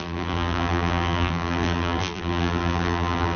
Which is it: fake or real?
fake